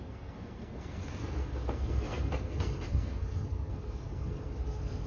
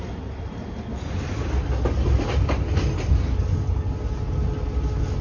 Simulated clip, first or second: first